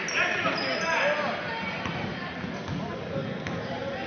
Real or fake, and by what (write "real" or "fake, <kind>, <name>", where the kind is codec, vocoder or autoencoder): real